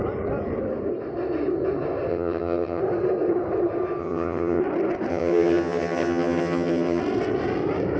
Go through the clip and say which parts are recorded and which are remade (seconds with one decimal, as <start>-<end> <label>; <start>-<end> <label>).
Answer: 0.0-2.1 recorded; 2.1-2.8 remade; 2.8-4.0 recorded; 4.0-4.6 remade; 4.6-5.1 recorded; 5.1-7.0 remade; 7.0-8.0 recorded